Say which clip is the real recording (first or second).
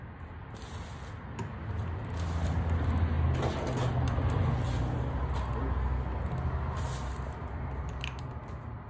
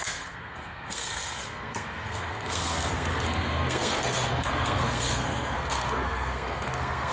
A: first